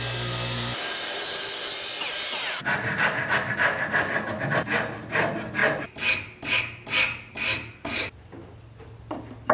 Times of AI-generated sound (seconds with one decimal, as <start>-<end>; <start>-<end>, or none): none